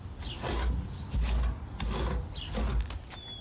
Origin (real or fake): real